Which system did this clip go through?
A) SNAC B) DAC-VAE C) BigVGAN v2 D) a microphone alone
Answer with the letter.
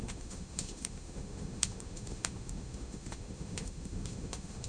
B